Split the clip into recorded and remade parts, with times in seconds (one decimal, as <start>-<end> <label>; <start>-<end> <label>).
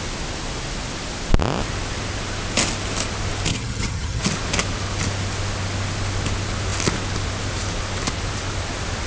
0.0-3.5 recorded; 3.5-4.2 remade; 4.2-9.1 recorded